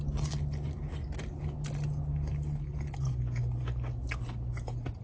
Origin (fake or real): real